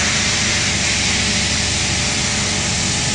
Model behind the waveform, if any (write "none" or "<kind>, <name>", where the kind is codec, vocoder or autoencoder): none